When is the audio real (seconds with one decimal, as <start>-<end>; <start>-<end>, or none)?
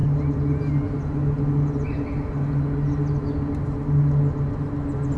0.0-5.2